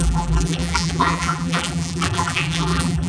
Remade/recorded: remade